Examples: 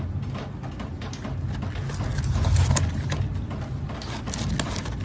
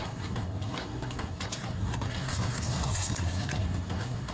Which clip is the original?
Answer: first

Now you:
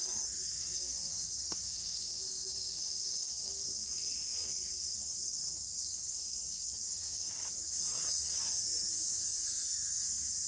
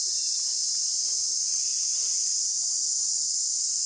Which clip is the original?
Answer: second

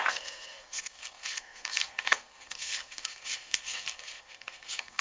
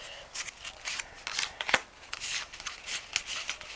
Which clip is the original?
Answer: second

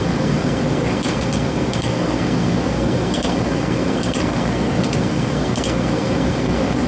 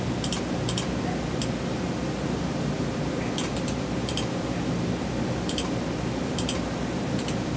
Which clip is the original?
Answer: second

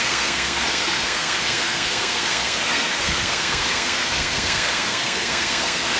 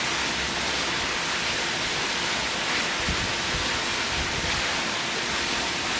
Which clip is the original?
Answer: second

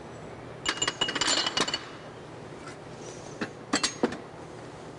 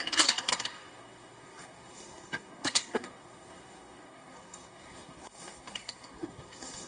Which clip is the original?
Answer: first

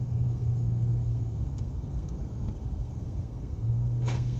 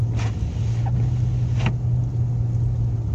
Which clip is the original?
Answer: second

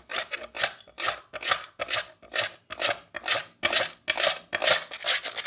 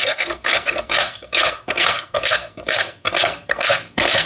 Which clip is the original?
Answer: first